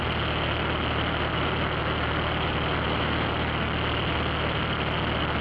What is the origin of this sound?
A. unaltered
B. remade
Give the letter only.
A